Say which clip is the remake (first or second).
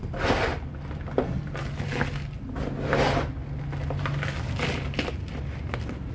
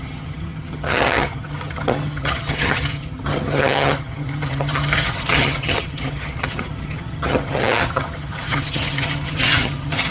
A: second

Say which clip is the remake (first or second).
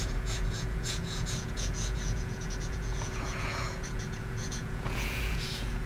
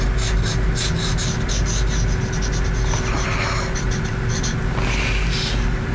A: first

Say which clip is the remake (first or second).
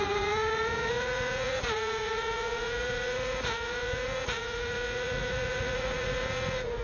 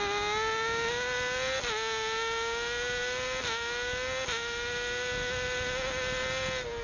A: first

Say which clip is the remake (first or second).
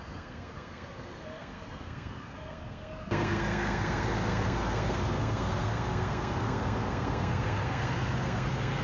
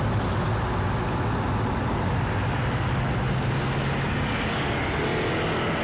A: first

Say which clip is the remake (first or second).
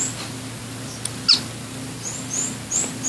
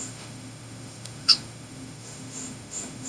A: second